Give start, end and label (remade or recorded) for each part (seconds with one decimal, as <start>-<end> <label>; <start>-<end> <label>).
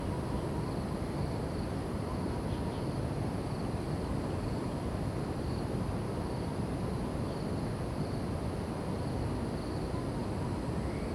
0.0-11.1 recorded